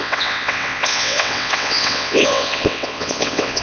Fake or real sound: fake